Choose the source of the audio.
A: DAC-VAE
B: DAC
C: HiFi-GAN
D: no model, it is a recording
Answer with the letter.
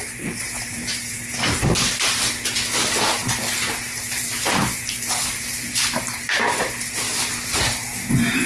D